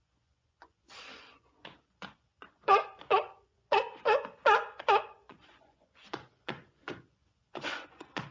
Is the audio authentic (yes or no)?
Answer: no